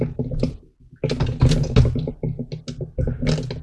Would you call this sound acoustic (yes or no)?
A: yes